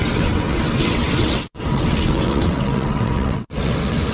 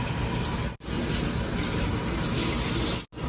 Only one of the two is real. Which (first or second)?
second